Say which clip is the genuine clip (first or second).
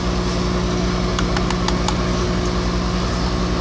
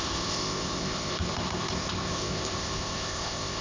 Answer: first